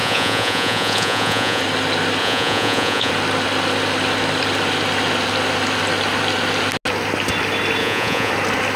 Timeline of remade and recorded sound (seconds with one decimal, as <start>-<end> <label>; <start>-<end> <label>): 0.0-1.6 remade; 1.6-2.2 recorded; 2.2-3.1 remade; 3.1-7.8 recorded; 7.8-8.3 remade; 8.3-8.8 recorded